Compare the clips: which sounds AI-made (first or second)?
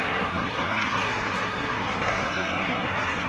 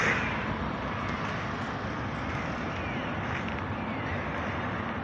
first